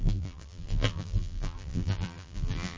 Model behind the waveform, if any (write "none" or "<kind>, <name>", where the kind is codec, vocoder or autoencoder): vocoder, BigVGAN v2